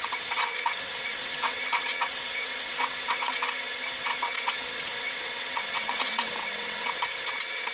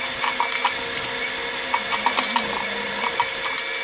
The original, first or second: second